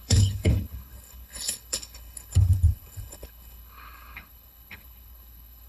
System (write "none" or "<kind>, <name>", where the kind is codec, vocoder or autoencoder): codec, HILCodec